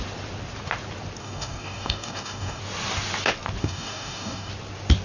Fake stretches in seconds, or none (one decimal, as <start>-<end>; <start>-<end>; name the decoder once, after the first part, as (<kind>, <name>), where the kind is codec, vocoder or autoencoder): 1.2-2.6 (codec, DAC); 3.6-4.5